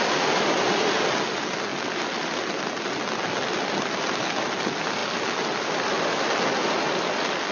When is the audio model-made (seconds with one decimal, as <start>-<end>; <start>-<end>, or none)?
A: none